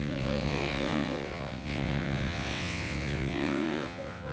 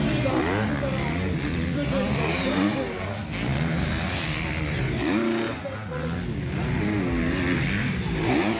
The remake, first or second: first